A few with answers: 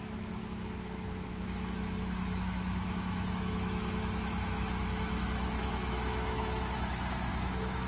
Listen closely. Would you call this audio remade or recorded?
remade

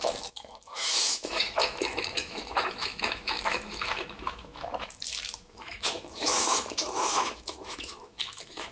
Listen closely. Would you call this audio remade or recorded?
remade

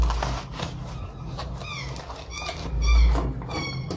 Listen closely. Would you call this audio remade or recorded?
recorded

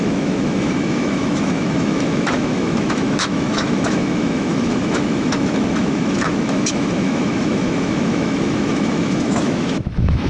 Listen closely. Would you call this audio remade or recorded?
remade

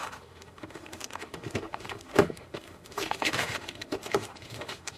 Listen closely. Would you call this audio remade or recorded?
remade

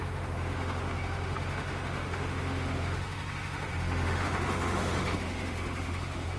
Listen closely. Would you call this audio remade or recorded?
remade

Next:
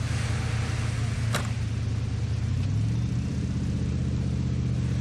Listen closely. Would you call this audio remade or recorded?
recorded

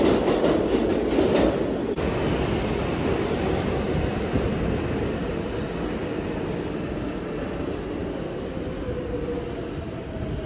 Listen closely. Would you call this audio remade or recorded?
recorded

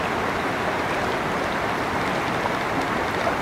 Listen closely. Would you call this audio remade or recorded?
recorded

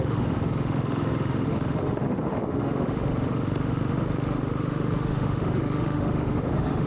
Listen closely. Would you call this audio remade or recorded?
remade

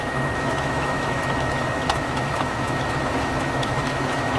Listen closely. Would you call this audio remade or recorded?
remade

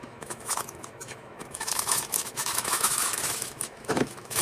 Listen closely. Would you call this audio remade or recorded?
remade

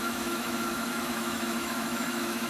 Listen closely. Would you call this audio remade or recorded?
remade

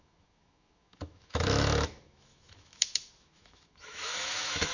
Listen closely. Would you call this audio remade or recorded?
remade